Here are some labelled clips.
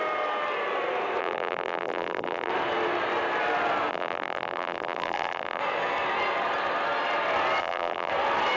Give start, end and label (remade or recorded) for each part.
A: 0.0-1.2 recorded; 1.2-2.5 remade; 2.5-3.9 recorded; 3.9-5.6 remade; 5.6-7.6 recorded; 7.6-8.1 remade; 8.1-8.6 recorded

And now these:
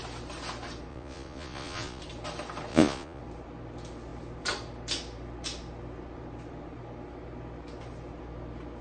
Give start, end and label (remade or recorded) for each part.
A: 0.0-0.9 recorded; 0.9-2.0 remade; 2.0-2.7 recorded; 2.7-3.2 remade; 3.2-8.8 recorded

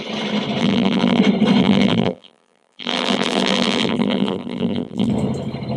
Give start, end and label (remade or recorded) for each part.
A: 0.0-0.6 recorded; 0.6-1.2 remade; 1.2-1.6 recorded; 1.6-5.1 remade; 5.1-5.8 recorded